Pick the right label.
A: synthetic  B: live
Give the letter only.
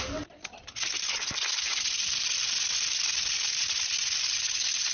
B